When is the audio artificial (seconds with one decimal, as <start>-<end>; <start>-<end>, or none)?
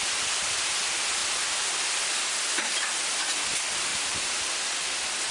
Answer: 3.9-4.5